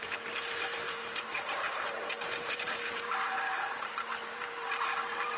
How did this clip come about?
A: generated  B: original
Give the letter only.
A